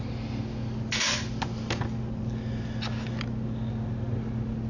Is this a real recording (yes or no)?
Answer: yes